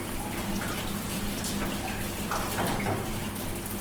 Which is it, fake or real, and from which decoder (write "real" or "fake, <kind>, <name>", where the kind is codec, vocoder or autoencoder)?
real